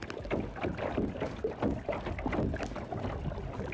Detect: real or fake real